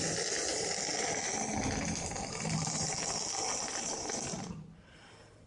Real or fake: real